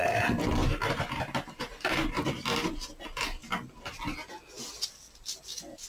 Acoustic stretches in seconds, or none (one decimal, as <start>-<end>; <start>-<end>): 0.0-0.6; 2.3-5.9